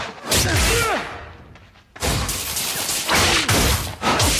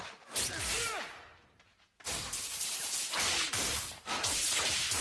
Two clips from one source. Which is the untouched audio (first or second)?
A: first